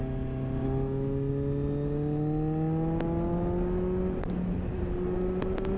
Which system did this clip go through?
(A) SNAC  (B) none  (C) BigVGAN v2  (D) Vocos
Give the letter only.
B